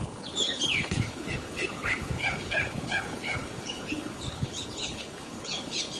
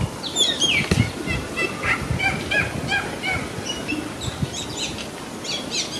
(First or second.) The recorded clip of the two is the second